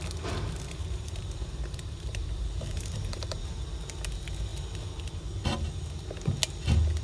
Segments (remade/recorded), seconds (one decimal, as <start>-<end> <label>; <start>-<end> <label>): 0.0-0.8 recorded; 0.8-3.4 remade; 3.4-7.0 recorded

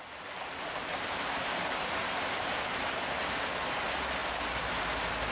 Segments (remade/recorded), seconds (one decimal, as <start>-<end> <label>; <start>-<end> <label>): 0.0-0.7 recorded; 0.7-3.8 remade; 3.8-4.2 recorded; 4.2-4.8 remade; 4.8-5.3 recorded

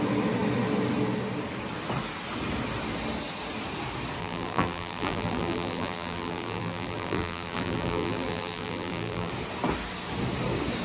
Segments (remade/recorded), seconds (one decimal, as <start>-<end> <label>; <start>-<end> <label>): 0.0-4.2 recorded; 4.2-9.3 remade; 9.3-10.8 recorded

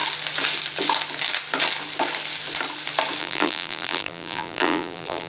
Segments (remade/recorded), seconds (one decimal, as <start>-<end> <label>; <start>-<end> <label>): 0.0-3.2 recorded; 3.2-5.3 remade

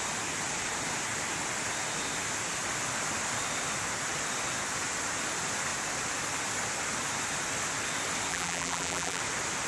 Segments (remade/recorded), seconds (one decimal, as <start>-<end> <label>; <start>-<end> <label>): 0.0-8.3 recorded; 8.3-9.2 remade; 9.2-9.7 recorded

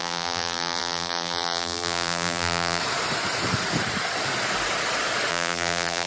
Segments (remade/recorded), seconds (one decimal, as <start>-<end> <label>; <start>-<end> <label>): 0.0-2.8 remade; 2.8-5.3 recorded; 5.3-6.1 remade

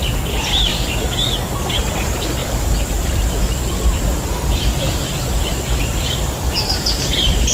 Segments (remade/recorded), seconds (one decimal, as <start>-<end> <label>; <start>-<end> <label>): 0.0-0.7 remade; 0.7-1.8 recorded; 1.8-7.5 remade

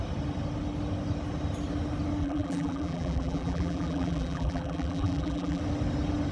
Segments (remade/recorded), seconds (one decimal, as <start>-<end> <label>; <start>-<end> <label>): 0.0-2.2 recorded; 2.2-5.6 remade; 5.6-6.3 recorded